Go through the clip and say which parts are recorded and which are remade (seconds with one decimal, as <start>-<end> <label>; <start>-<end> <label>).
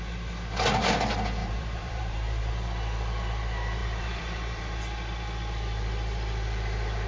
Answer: 0.0-1.4 recorded; 1.4-2.5 remade; 2.5-3.8 recorded; 3.8-4.8 remade; 4.8-7.1 recorded